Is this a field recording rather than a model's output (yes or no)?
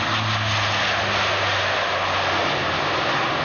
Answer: yes